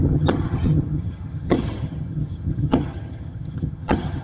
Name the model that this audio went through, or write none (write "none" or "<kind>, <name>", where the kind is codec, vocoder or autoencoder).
vocoder, HiFi-GAN